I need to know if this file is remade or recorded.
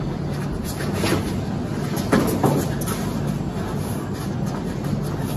recorded